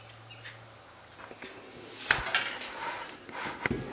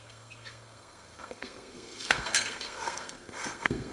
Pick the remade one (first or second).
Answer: second